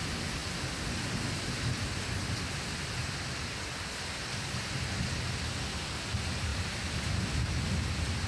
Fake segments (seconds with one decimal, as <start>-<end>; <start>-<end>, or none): none